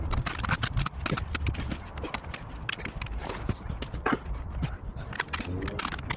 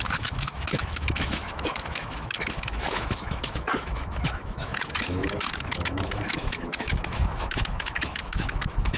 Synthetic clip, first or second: second